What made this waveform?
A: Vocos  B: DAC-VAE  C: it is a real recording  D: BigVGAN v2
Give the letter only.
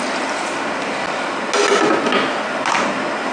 C